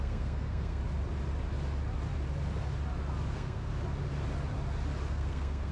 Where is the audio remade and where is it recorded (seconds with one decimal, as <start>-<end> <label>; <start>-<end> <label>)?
0.0-0.8 remade; 0.8-3.3 recorded; 3.3-3.7 remade; 3.7-5.1 recorded; 5.1-5.7 remade